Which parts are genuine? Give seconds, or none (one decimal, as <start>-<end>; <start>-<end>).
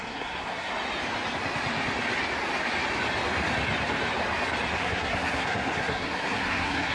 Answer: 0.7-4.8